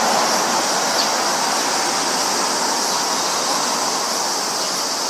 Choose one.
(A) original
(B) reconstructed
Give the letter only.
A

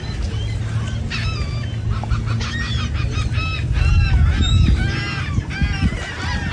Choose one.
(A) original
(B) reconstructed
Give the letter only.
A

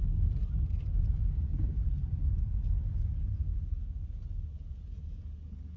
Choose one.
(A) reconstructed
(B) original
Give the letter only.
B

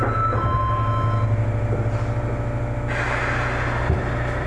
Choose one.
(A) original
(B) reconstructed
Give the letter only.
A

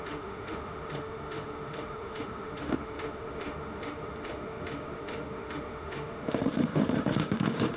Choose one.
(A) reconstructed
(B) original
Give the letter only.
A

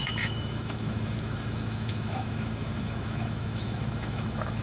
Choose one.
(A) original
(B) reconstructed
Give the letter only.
B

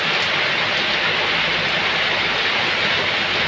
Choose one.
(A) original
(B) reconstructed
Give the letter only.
A